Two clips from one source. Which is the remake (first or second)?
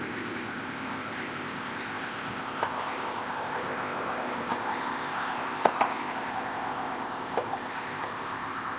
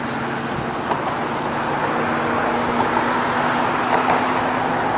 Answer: first